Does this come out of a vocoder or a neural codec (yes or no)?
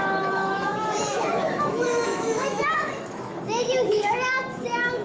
yes